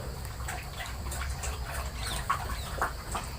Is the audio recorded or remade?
remade